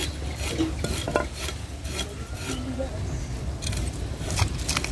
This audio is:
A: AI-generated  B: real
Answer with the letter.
B